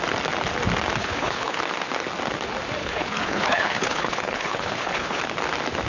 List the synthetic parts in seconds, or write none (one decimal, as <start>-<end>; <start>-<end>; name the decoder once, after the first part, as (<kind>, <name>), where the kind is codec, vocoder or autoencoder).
1.0-1.6 (codec, HILCodec); 2.8-5.2